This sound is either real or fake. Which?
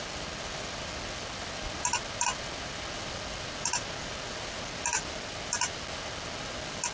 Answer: real